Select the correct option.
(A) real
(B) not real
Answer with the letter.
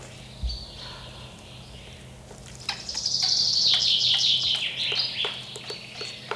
A